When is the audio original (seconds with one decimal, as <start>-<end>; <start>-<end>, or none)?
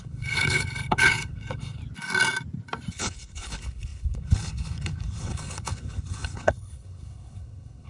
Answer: 1.8-2.9